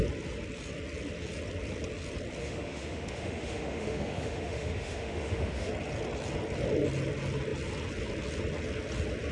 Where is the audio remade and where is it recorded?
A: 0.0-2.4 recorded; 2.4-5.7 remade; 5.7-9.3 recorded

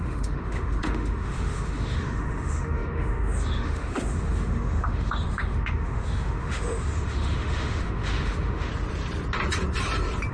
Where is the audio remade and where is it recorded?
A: 0.0-8.7 remade; 8.7-10.3 recorded